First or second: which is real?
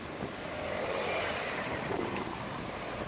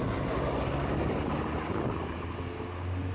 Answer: second